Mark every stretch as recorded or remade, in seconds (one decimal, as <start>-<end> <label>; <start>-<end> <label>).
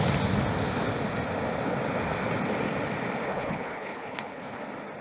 0.0-3.3 recorded; 3.3-4.6 remade; 4.6-5.0 recorded